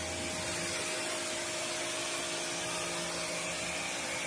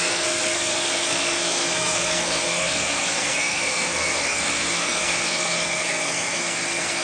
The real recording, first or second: first